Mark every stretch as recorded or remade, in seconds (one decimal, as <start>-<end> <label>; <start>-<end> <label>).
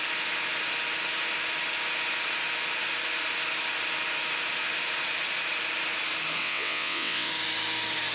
0.0-6.4 recorded; 6.4-7.3 remade; 7.3-8.1 recorded